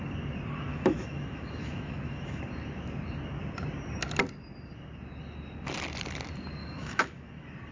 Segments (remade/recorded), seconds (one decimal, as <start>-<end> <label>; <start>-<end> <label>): 0.0-0.7 recorded; 0.7-2.4 remade; 2.4-6.6 recorded; 6.6-7.3 remade; 7.3-7.7 recorded